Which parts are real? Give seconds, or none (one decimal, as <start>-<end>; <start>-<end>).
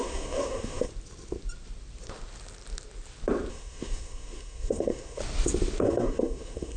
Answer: 0.9-3.5; 5.2-5.8